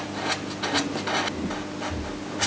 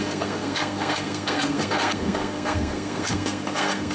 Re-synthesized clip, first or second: second